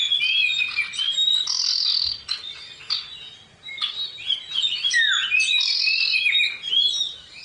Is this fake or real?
real